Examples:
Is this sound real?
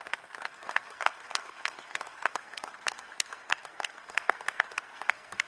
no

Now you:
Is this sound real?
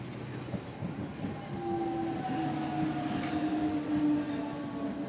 yes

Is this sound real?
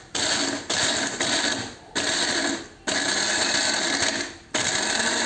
yes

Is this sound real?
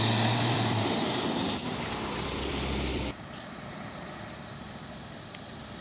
no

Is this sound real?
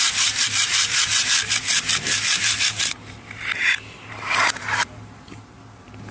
no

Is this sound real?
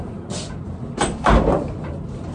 no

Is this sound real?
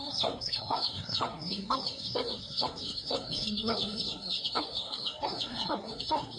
no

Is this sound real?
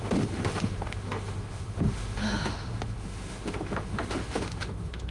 no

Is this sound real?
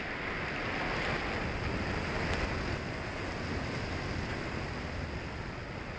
yes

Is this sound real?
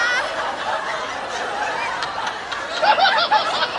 yes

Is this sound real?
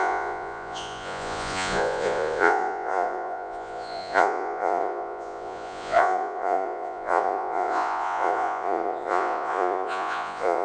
no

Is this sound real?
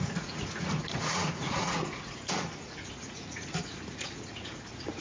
no